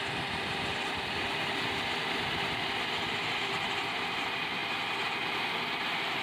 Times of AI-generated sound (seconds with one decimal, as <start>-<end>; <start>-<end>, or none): none

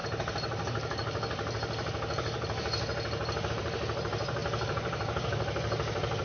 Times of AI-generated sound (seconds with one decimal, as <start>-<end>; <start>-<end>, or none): 3.5-6.2

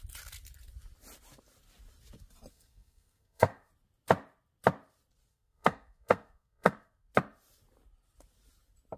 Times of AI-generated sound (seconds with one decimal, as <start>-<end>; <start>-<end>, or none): 2.5-3.7; 5.3-7.1

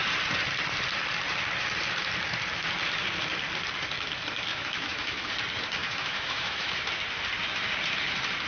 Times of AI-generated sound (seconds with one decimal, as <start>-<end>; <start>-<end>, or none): 4.5-5.3; 5.8-6.7